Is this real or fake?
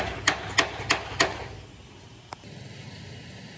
real